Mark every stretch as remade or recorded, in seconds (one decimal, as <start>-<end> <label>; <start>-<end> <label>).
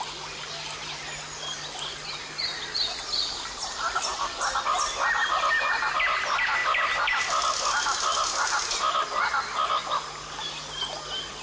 0.0-11.4 recorded